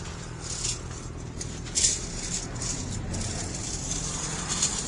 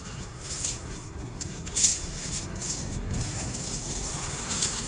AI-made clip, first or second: second